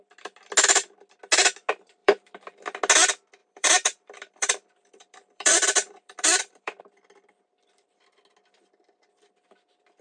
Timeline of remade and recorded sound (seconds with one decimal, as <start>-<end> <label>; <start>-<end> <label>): 0.0-2.0 recorded; 2.0-2.6 remade; 2.6-3.4 recorded; 3.4-6.8 remade; 6.8-10.0 recorded